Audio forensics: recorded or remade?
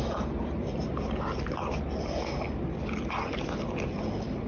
recorded